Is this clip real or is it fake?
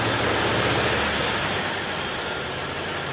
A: real